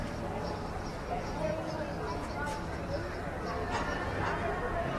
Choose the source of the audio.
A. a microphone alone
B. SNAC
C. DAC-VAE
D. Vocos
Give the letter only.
A